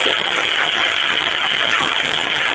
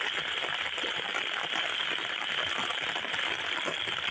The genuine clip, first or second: second